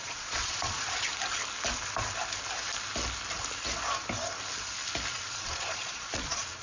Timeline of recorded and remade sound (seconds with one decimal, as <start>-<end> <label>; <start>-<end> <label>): 0.0-1.1 remade; 1.1-5.1 recorded; 5.1-6.6 remade